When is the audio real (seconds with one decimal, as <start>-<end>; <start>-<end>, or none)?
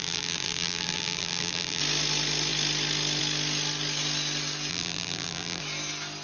1.8-4.7; 5.6-6.2